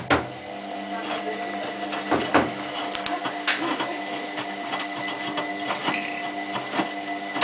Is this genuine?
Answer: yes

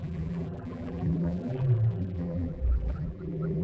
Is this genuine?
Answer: no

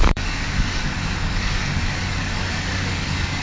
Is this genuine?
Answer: no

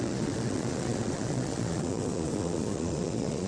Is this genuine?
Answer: no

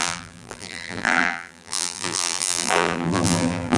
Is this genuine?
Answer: no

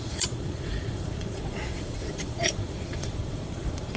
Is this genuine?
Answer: no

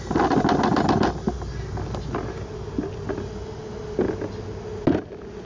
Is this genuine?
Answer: yes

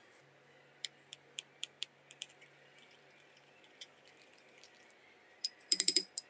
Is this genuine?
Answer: no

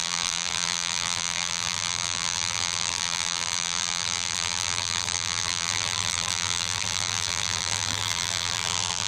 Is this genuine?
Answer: no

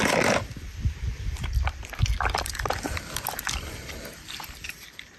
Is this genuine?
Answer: no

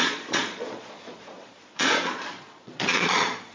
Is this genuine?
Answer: no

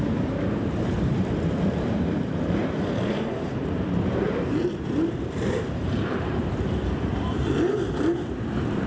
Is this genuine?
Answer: no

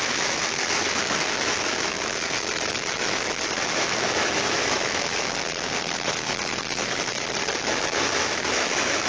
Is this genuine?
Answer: no